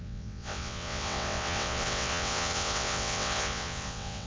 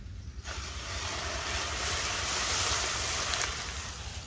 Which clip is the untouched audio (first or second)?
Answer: second